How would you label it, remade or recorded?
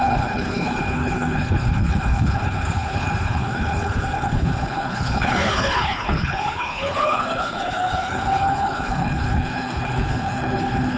remade